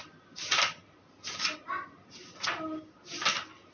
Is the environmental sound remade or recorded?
recorded